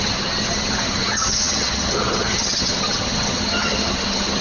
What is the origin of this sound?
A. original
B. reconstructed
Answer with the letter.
B